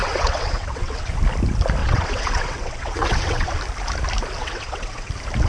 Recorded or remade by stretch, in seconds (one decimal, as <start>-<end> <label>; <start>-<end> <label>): 0.0-1.1 remade; 1.1-1.8 recorded; 1.8-3.5 remade; 3.5-4.4 recorded; 4.4-5.1 remade; 5.1-5.5 recorded